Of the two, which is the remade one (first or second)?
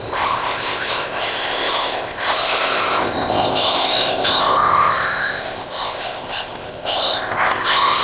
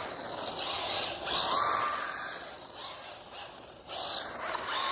first